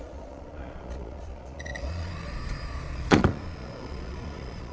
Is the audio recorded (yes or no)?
no